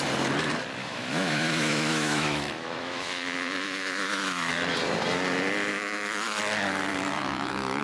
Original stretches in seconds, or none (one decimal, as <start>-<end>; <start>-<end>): 0.0-0.8; 4.5-5.7; 6.4-6.9